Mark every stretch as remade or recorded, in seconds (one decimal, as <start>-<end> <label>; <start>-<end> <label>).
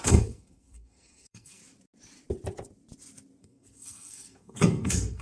0.0-1.6 remade; 1.6-3.4 recorded; 3.4-5.2 remade